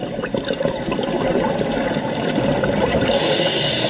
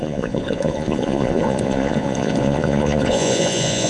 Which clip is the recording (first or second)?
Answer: first